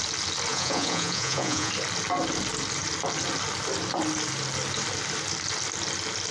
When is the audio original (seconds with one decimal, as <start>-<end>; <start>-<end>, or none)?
0.0-0.5; 1.7-6.3